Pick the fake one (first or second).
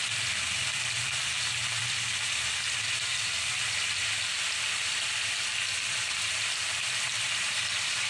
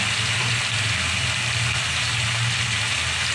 first